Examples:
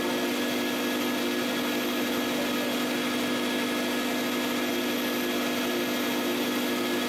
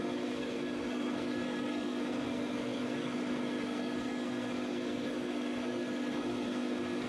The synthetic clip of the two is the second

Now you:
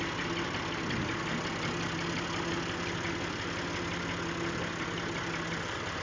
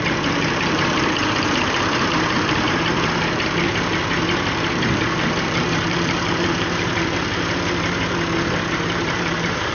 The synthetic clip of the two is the second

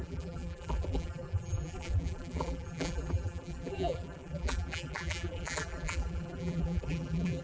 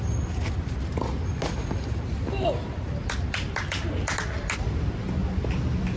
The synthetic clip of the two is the first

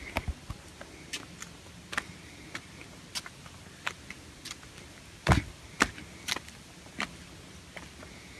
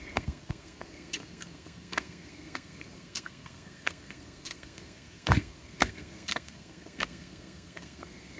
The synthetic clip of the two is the second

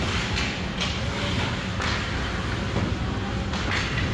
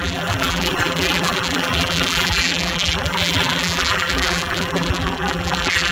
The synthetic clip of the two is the second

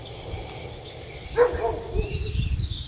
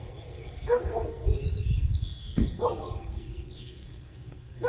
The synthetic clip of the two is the second